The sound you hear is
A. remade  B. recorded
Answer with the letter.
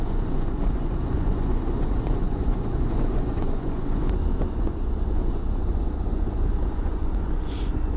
A